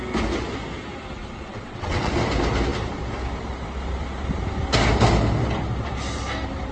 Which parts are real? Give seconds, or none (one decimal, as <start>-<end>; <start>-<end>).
0.0-1.2; 2.1-6.7